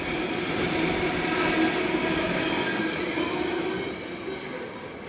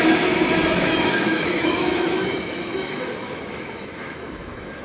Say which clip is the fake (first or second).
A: second